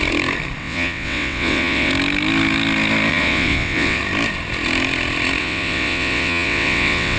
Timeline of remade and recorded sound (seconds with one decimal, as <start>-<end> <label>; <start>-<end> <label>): 0.0-0.6 recorded; 0.6-1.9 remade; 1.9-3.1 recorded; 3.1-4.0 remade; 4.0-5.4 recorded; 5.4-7.2 remade